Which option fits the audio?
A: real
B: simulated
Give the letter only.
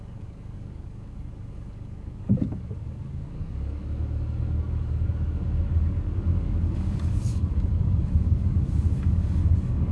B